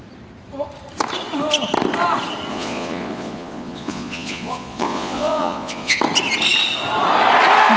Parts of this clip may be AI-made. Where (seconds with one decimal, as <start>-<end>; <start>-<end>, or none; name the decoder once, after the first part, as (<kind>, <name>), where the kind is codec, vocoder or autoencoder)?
2.5-6.0 (vocoder, Vocos)